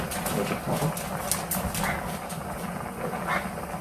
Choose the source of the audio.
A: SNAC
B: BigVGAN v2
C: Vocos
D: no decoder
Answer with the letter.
D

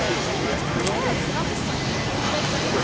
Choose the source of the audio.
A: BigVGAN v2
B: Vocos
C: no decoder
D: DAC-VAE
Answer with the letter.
C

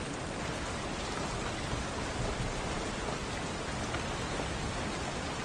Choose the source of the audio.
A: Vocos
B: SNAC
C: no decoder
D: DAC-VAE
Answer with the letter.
C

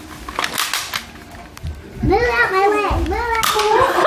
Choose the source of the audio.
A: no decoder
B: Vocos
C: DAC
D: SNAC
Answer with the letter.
A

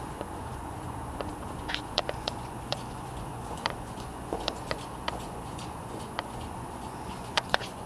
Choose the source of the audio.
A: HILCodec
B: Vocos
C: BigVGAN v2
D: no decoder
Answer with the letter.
B